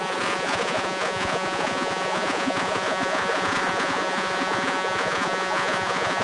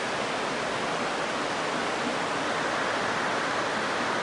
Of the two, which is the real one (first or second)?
second